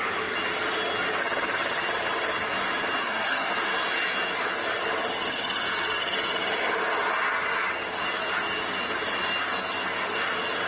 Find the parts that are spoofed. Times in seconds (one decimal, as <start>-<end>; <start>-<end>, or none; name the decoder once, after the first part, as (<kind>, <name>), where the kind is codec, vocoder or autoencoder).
3.0-3.5 (codec, SNAC)